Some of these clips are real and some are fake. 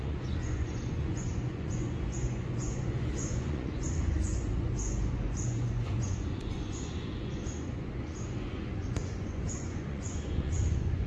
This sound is fake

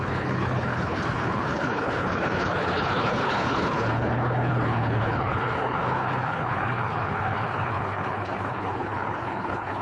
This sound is fake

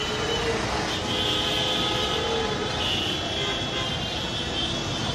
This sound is real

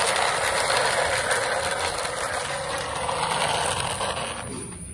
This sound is real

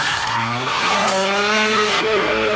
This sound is fake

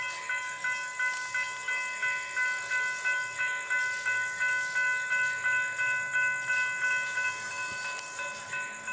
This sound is real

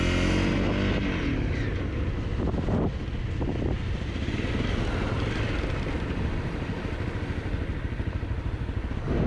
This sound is real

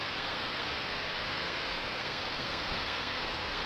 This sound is fake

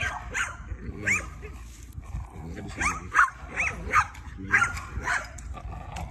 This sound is real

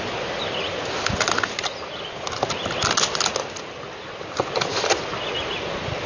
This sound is real